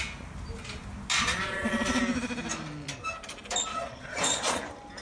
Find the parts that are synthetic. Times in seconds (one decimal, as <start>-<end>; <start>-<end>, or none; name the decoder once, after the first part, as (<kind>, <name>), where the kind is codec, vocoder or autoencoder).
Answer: 1.1-2.0 (vocoder, Vocos); 3.7-4.6